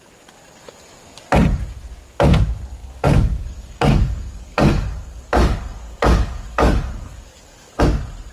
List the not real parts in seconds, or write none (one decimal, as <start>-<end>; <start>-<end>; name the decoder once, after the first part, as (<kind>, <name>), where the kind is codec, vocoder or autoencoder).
2.8-7.8 (codec, DAC)